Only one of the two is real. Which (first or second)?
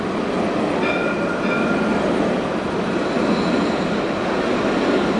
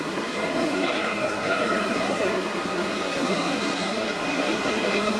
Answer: first